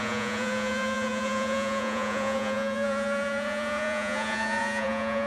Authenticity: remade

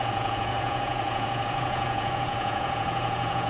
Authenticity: remade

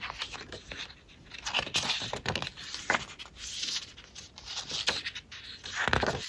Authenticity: recorded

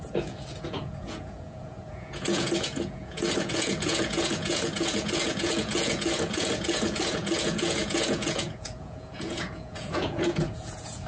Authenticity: remade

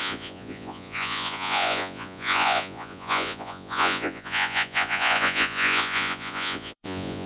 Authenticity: remade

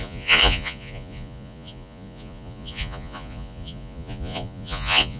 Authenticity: remade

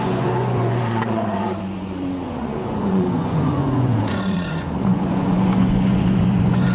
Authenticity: remade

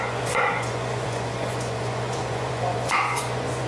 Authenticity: remade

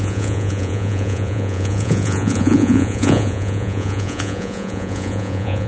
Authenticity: remade